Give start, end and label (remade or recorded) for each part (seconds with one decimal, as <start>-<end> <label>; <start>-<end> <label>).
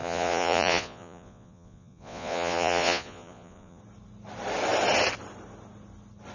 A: 0.0-3.8 remade; 3.8-6.3 recorded